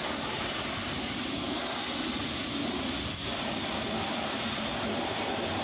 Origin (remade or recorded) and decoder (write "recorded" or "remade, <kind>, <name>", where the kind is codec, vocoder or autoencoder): remade, vocoder, BigVGAN v2